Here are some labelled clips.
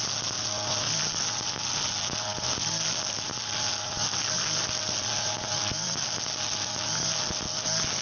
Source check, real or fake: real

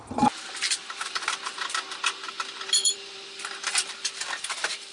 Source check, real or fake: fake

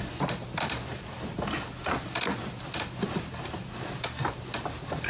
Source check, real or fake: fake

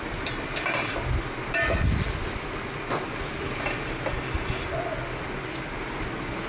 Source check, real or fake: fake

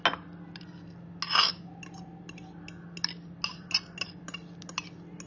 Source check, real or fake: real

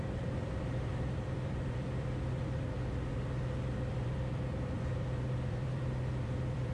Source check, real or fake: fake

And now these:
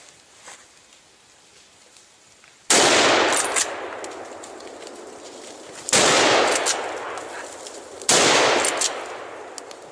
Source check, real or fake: real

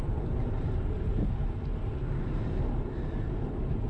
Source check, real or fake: real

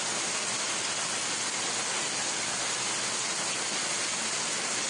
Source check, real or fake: real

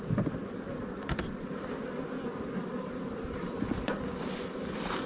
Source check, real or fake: fake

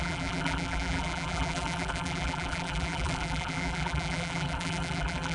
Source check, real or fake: fake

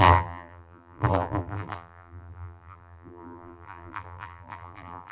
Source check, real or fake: fake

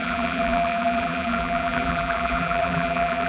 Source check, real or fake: fake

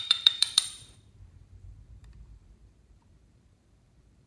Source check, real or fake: fake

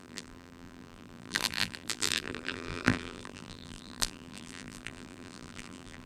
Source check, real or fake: fake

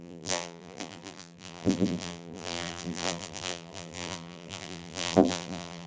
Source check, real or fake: fake